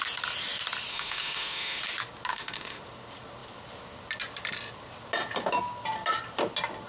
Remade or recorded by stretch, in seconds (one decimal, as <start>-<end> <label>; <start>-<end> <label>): 0.0-0.9 recorded; 0.9-1.8 remade; 1.8-2.3 recorded; 2.3-2.8 remade; 2.8-6.9 recorded